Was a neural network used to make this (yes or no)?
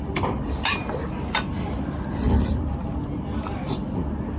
no